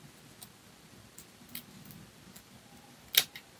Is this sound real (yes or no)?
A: yes